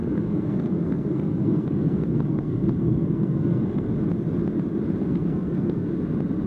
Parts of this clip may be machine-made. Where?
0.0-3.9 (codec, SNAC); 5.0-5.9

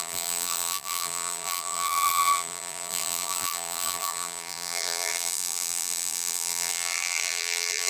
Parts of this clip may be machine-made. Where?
0.0-7.9 (vocoder, BigVGAN v2)

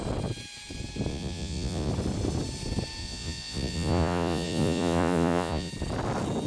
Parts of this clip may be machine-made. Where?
1.1-1.9 (vocoder, Vocos); 3.0-5.7

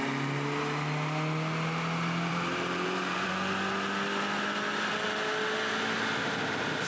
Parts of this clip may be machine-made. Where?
2.3-3.3 (vocoder, BigVGAN v2)

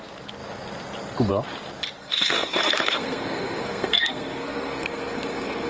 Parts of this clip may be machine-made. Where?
2.0-5.7 (codec, SNAC)

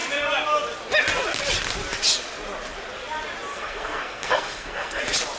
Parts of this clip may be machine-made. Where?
3.5-5.0 (codec, SNAC)

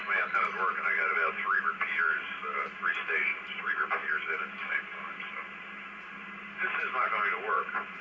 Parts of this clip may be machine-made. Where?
0.0-1.3 (vocoder, BigVGAN v2)